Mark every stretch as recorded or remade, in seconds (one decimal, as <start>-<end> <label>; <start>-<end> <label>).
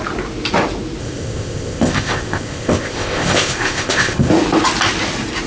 0.0-1.0 recorded; 1.0-4.3 remade; 4.3-5.5 recorded